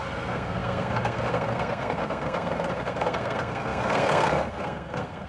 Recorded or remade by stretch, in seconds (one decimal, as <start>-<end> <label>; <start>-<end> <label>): 0.0-5.3 remade